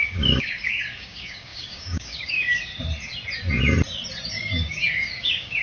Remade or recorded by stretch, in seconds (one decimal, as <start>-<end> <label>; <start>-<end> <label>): 0.0-2.7 remade; 2.7-4.3 recorded; 4.3-5.6 remade